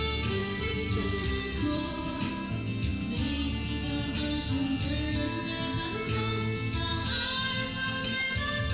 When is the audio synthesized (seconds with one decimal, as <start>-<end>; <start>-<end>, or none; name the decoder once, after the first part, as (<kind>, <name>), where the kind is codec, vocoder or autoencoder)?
0.4-2.3 (vocoder, BigVGAN v2)